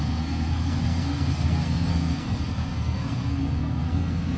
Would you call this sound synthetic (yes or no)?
yes